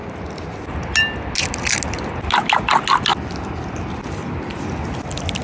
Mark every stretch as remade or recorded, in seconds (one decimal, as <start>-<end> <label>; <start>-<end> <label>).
0.0-5.4 recorded